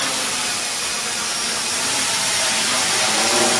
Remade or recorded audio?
remade